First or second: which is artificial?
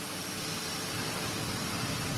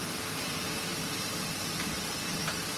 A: second